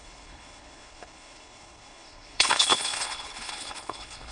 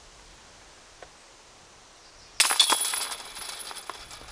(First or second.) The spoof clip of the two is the first